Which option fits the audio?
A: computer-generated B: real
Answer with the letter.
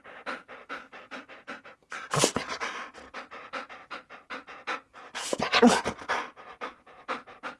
B